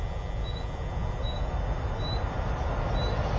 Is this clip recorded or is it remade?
recorded